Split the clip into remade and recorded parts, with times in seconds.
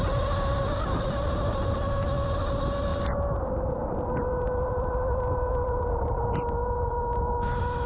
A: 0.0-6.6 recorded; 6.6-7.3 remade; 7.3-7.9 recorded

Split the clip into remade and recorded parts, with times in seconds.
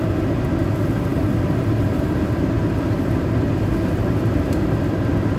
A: 0.0-5.4 recorded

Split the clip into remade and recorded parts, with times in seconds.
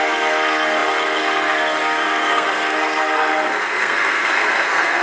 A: 0.0-5.0 remade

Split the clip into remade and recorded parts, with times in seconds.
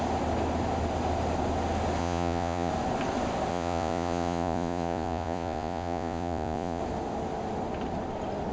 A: 0.0-2.0 recorded; 2.0-2.7 remade; 2.7-3.5 recorded; 3.5-6.8 remade; 6.8-8.5 recorded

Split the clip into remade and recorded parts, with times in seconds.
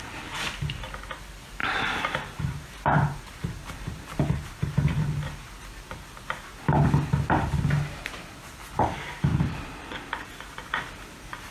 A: 0.0-1.6 recorded; 1.6-4.7 remade; 4.7-9.3 recorded; 9.3-10.3 remade; 10.3-11.5 recorded